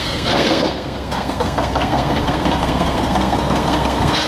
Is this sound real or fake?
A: fake